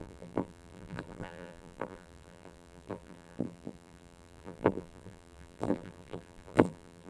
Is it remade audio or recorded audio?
remade